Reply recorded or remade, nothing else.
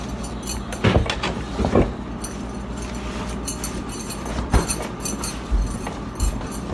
recorded